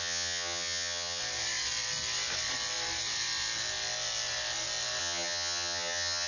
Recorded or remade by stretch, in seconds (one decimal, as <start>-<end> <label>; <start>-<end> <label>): 0.0-1.2 remade; 1.2-5.0 recorded; 5.0-6.3 remade